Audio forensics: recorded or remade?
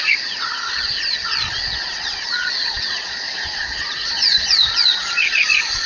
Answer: remade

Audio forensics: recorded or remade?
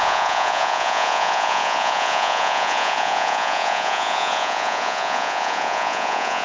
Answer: remade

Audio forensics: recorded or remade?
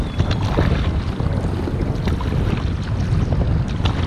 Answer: recorded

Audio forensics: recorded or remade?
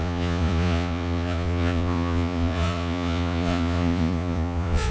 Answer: remade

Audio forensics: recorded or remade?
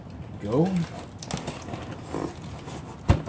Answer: recorded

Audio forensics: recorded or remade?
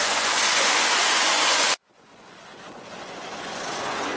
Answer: remade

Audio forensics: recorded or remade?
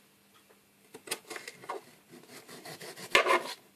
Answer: recorded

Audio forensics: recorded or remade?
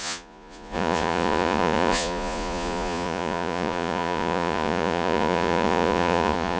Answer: remade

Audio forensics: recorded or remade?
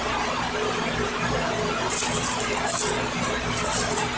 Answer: recorded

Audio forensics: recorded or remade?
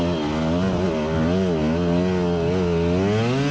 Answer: recorded